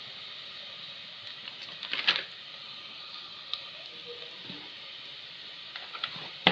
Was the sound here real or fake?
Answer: real